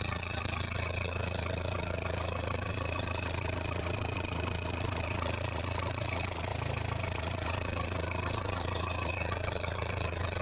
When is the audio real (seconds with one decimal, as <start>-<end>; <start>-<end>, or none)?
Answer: 6.5-7.0

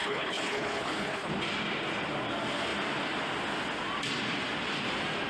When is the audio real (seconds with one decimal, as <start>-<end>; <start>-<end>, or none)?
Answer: 1.3-5.3

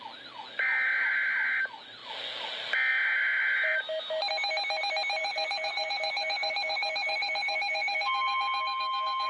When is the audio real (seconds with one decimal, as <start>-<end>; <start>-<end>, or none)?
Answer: 0.0-5.2

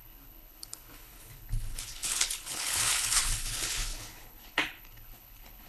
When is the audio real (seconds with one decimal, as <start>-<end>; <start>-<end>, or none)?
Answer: none

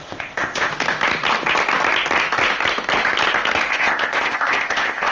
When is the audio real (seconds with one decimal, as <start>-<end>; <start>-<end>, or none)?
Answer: 0.7-3.7

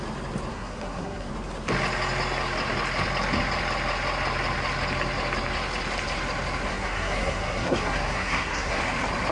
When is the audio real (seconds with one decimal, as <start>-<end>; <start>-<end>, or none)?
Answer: 0.0-0.5; 1.3-6.7; 8.8-9.3